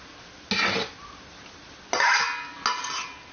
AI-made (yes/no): no